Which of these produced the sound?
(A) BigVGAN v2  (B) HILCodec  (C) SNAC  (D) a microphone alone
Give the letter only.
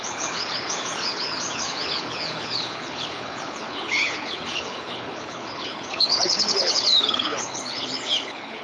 B